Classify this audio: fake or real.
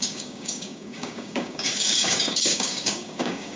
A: fake